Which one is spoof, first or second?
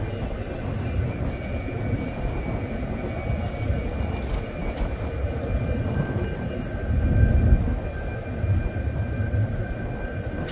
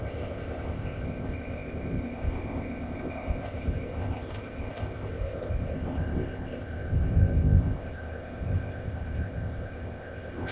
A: second